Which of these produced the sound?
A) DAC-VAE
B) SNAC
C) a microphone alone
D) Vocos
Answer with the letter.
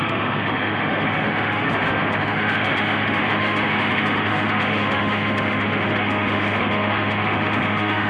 A